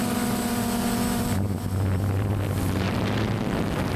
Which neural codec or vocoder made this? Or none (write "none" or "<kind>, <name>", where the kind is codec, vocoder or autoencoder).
none